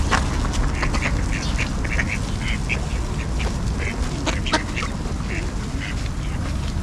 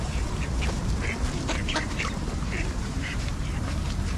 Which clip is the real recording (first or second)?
first